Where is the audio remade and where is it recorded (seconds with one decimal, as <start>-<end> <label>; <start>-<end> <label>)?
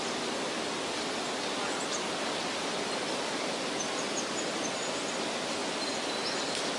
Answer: 0.0-6.8 recorded